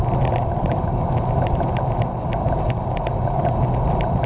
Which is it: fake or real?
real